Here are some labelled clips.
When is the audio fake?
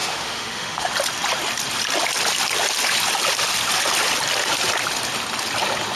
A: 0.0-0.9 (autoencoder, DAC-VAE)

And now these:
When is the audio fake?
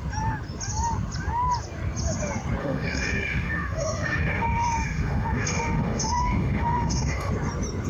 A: 2.6-7.3 (autoencoder, DAC-VAE)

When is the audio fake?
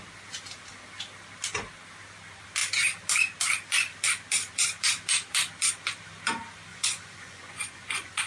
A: 6.7-8.3 (vocoder, Vocos)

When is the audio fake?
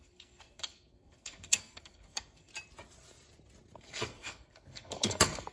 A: 0.0-2.5 (codec, SNAC); 3.8-5.5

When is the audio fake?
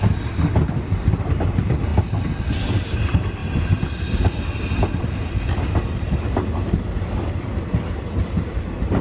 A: 0.0-1.9 (vocoder, BigVGAN v2); 3.0-3.4; 5.0-9.0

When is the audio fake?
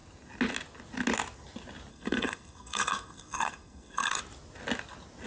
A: 1.9-4.2 (codec, SNAC)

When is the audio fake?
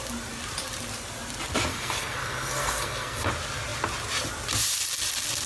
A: 1.7-3.3 (codec, SNAC)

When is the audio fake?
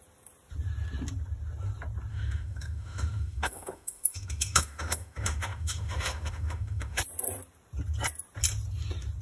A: 2.1-7.0 (autoencoder, DAC-VAE)